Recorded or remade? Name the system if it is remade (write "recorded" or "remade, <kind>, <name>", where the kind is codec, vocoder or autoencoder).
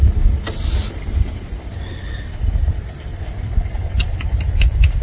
recorded